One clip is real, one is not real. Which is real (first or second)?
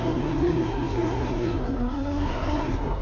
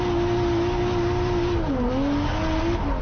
second